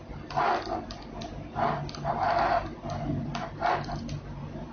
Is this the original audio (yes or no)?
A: yes